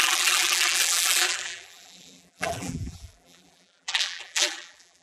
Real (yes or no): no